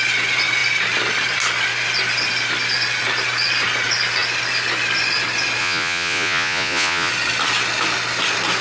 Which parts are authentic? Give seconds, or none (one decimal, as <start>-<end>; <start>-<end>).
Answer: 0.0-5.6; 7.1-8.6